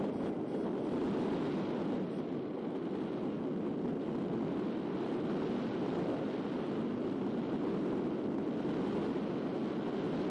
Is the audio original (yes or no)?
yes